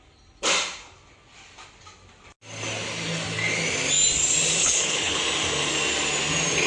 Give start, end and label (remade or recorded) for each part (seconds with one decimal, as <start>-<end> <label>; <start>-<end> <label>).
0.0-4.6 recorded; 4.6-5.2 remade; 5.2-6.7 recorded

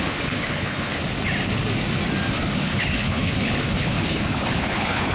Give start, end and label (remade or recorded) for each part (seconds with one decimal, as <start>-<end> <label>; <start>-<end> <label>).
0.0-1.0 remade; 1.0-2.5 recorded; 2.5-5.1 remade

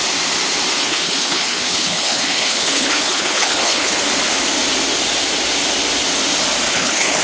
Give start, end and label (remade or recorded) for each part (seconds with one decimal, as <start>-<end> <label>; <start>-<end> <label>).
0.0-0.8 recorded; 0.8-4.0 remade; 4.0-6.7 recorded; 6.7-7.2 remade

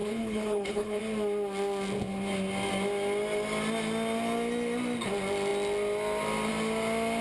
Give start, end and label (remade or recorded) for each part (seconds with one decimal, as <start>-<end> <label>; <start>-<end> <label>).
0.0-1.0 remade; 1.0-7.2 recorded